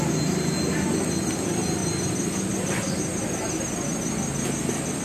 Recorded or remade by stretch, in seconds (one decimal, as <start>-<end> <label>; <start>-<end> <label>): 0.0-5.0 recorded